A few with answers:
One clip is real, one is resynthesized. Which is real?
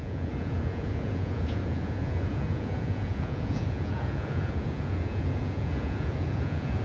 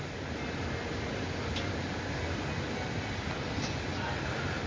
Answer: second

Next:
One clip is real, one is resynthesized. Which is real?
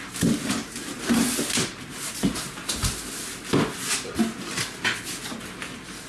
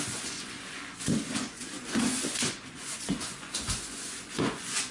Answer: first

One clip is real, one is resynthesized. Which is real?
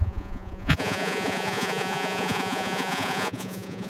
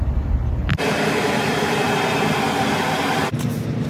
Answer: second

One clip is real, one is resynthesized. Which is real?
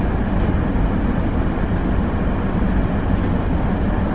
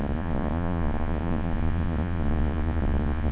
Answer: first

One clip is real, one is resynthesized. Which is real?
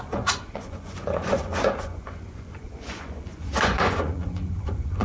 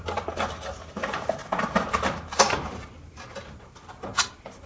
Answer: second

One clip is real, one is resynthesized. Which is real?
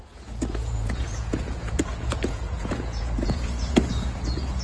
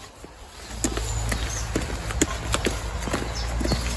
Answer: second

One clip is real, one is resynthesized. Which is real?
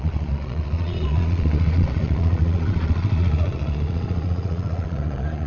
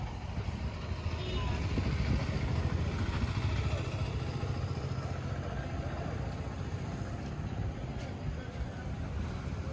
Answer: second